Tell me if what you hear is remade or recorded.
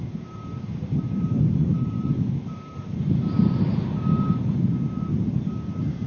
remade